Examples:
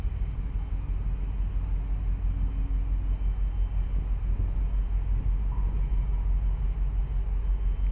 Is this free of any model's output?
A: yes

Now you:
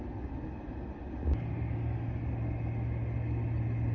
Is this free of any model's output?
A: yes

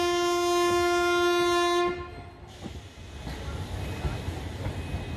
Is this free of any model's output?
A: yes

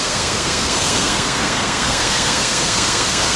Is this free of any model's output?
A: no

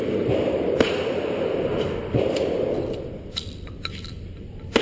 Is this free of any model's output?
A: yes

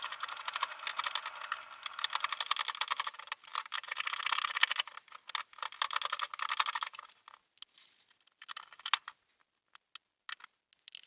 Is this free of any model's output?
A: yes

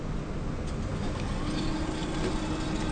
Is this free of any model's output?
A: yes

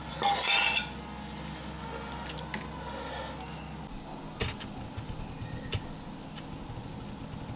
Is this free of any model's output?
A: yes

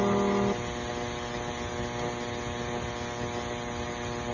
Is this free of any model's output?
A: yes